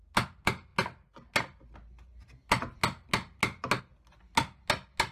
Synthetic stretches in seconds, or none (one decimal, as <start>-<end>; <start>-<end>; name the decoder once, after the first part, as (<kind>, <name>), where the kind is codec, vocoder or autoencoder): none

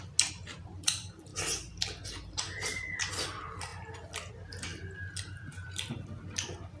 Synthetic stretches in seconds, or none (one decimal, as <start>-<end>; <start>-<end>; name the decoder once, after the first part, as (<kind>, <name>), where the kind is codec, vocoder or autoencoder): 4.7-6.8 (vocoder, BigVGAN v2)

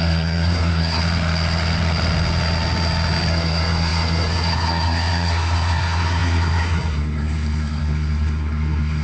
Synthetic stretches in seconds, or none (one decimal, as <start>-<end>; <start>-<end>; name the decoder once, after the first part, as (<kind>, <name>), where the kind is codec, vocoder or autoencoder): 0.0-1.0 (codec, SNAC); 3.3-9.0

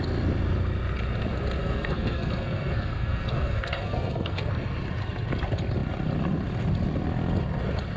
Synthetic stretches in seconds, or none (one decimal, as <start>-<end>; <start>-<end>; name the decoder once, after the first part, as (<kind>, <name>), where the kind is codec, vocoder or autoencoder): 1.6-4.5 (codec, SNAC)

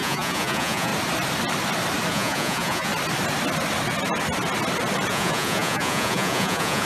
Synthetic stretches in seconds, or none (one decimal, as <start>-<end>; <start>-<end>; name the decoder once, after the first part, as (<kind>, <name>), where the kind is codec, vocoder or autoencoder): 0.0-0.9 (vocoder, Vocos); 2.1-2.9; 5.1-6.9

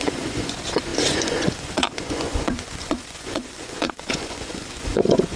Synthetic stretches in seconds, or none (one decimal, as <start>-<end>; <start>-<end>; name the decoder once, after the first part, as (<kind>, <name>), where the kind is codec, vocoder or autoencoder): 0.0-5.4 (vocoder, Vocos)

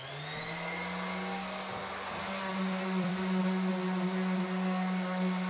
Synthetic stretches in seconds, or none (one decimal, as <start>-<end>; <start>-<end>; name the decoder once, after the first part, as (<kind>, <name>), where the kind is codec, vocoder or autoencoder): 2.5-3.4 (vocoder, BigVGAN v2)